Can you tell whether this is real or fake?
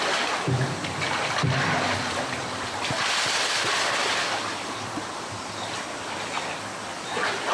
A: real